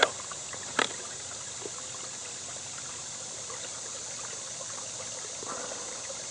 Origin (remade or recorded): recorded